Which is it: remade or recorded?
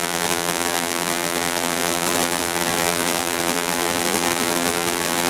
remade